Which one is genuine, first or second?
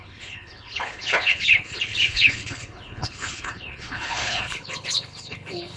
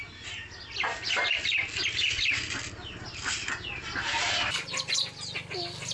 second